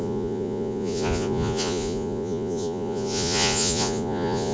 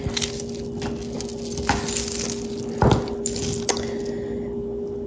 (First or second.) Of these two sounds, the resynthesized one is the first